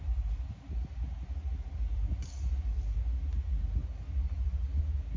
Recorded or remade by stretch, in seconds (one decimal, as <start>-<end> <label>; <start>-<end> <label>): 0.0-5.2 recorded